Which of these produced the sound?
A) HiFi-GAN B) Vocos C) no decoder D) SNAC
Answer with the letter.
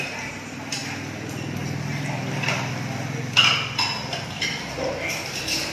C